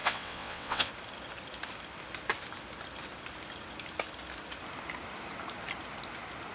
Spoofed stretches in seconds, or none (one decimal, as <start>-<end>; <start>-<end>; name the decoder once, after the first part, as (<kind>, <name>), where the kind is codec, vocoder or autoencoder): 0.0-0.9 (vocoder, WaveNeXt)